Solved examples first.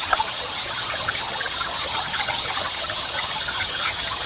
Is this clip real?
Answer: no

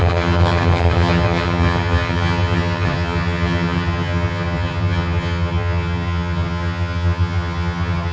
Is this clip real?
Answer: no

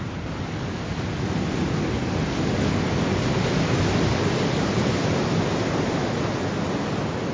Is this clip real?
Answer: yes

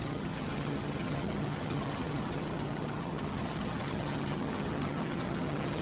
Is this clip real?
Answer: no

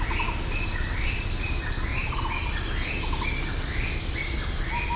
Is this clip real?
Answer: yes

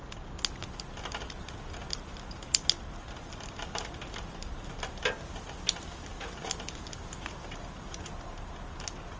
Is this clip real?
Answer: yes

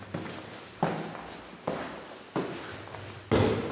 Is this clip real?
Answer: yes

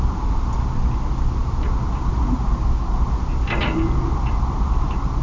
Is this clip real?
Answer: yes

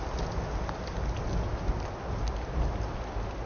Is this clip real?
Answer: yes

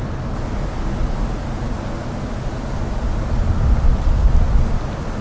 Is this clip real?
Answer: yes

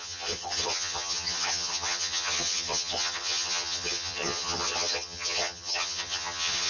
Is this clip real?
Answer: no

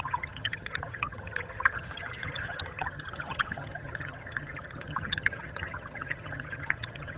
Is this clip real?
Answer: no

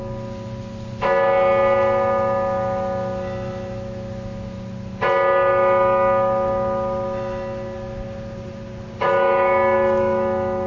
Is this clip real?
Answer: yes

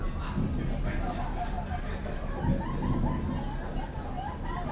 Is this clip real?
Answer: yes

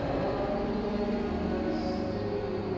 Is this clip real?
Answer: yes